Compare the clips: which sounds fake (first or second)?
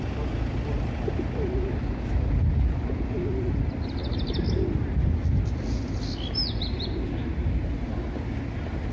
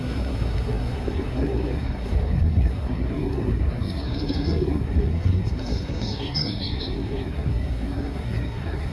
second